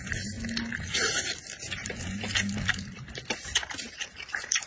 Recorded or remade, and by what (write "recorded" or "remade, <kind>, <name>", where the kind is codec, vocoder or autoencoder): recorded